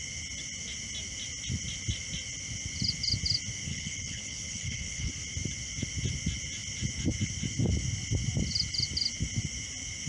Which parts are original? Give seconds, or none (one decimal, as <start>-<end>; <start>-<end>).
0.0-3.7; 5.1-10.1